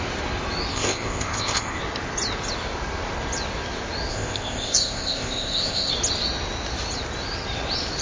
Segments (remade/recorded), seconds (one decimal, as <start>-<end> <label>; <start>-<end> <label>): 0.0-0.7 recorded; 0.7-1.8 remade; 1.8-4.1 recorded; 4.1-5.9 remade; 5.9-8.0 recorded